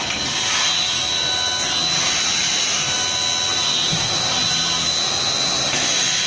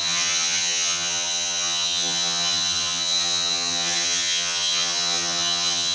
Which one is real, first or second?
first